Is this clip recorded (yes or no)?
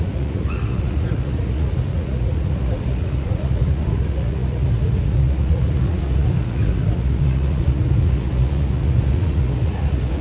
no